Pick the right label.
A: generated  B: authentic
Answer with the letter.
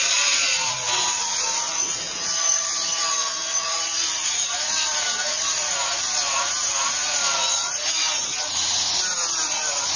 A